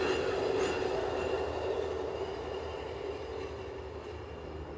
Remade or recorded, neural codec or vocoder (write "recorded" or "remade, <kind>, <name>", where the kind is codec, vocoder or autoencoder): recorded